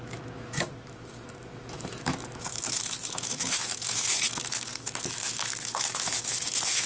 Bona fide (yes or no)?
no